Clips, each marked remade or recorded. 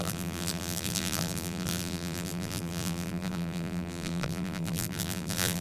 remade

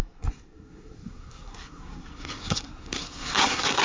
remade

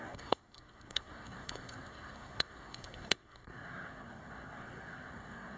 remade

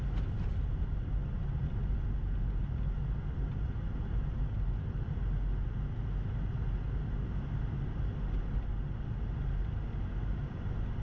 recorded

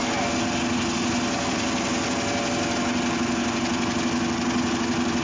recorded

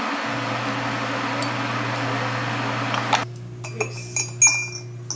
recorded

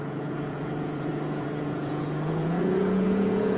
remade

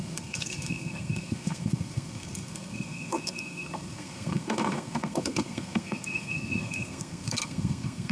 remade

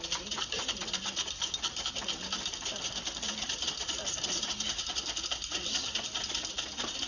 recorded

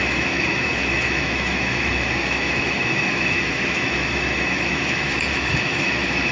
remade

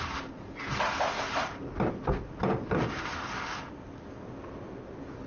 recorded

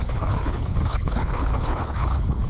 remade